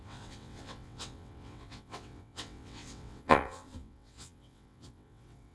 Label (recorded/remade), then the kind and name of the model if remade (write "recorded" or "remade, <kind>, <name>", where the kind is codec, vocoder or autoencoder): remade, vocoder, WaveNeXt